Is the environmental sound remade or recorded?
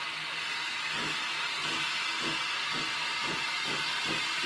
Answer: recorded